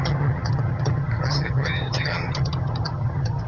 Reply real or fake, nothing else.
fake